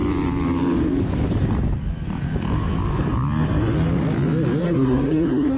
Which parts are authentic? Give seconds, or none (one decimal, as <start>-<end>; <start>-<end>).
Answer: 0.0-4.6